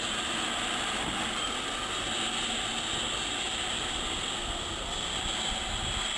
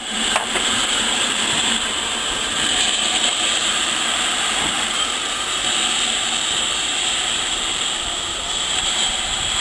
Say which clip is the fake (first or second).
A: second